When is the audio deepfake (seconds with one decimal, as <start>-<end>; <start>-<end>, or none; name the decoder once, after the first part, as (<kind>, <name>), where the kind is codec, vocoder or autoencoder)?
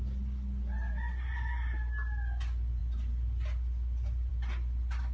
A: none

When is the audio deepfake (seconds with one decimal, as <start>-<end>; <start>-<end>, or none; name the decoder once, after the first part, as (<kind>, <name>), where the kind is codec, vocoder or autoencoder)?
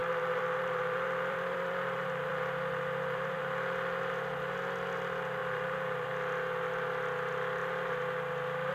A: 0.0-3.4 (vocoder, BigVGAN v2); 5.4-6.1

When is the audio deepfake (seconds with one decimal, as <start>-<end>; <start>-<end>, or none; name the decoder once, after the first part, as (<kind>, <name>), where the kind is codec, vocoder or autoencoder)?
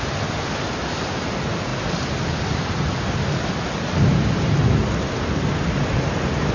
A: none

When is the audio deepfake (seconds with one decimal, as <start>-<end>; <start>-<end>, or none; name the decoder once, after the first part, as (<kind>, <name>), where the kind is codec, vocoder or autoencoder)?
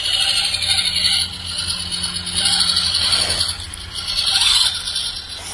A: none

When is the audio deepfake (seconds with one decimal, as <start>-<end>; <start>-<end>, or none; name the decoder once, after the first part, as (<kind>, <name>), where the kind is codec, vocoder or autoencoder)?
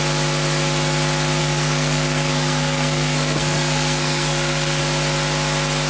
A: 1.4-4.8 (codec, SNAC)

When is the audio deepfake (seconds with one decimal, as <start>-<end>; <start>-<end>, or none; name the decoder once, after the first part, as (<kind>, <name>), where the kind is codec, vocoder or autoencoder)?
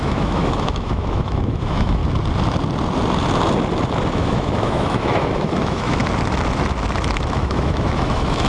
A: 0.0-2.0 (autoencoder, DAC-VAE); 4.1-6.0; 7.3-8.5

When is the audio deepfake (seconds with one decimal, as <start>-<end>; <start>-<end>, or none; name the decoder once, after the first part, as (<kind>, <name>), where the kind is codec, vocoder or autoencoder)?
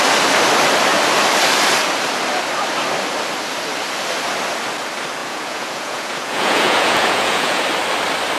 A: 5.2-7.6 (vocoder, Vocos)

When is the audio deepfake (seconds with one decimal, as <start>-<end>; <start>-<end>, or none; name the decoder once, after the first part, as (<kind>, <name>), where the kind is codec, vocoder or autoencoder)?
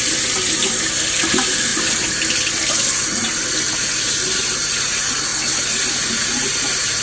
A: none